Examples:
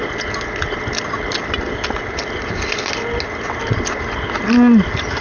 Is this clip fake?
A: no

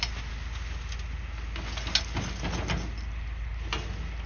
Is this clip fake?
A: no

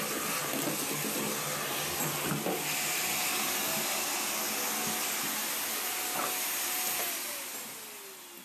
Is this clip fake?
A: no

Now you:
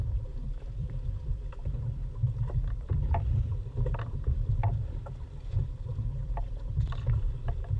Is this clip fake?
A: yes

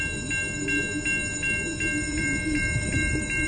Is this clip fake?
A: no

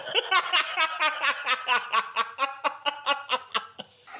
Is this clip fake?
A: no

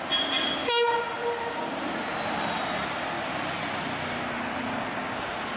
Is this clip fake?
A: no